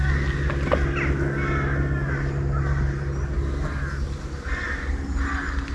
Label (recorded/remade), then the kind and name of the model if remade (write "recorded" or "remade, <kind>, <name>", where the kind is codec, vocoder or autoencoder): recorded